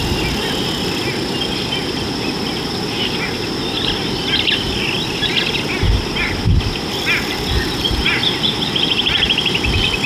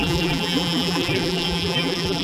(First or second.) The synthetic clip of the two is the second